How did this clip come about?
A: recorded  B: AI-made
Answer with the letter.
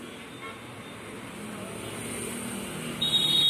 A